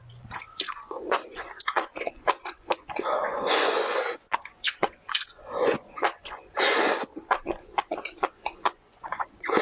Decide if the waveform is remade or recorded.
remade